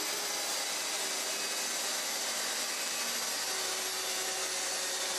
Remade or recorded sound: recorded